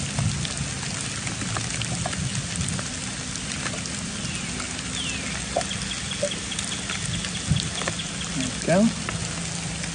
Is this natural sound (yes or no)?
yes